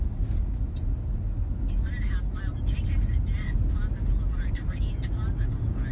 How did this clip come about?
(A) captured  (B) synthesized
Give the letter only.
A